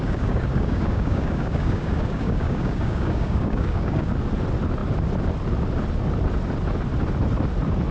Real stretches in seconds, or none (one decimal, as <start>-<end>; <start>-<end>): 4.1-7.9